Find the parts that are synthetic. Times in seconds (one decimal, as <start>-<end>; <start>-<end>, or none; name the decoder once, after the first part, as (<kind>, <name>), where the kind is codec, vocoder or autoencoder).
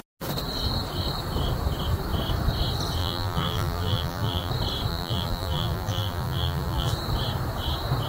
3.0-4.5 (vocoder, BigVGAN v2); 4.9-6.9